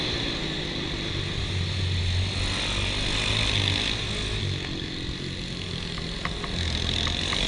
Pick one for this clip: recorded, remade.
recorded